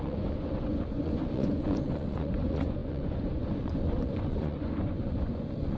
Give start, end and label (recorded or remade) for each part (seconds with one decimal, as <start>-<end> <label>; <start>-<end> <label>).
0.0-5.8 remade